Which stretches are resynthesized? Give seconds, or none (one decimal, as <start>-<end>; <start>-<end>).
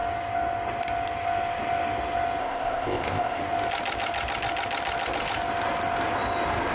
2.4-3.4